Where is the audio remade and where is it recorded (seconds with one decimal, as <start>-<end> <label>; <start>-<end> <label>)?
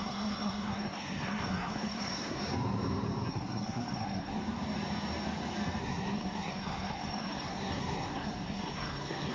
0.0-2.4 remade; 2.4-3.3 recorded; 3.3-4.4 remade; 4.4-5.8 recorded; 5.8-9.3 remade